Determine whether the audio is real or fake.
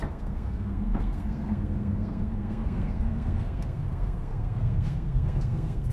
fake